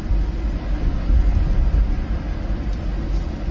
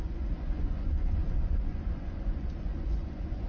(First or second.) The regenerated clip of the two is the second